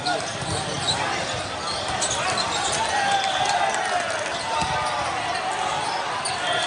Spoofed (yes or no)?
no